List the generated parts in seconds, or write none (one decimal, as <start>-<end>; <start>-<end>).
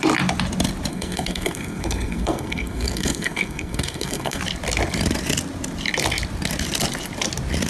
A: 0.9-4.4